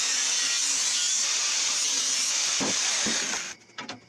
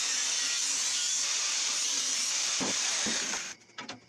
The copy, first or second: second